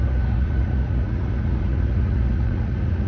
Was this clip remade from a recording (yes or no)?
yes